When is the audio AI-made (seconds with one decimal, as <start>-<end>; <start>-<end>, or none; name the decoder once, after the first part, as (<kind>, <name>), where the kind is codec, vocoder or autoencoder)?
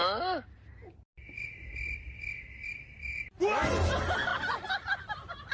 none